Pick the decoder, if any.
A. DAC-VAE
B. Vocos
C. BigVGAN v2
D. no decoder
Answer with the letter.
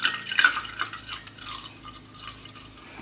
D